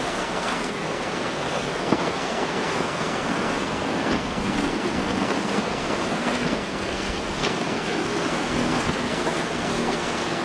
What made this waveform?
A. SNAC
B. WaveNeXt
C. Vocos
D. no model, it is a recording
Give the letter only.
A